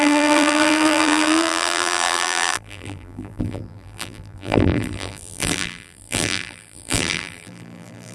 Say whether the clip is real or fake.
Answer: fake